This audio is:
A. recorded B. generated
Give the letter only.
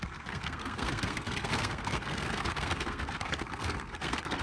B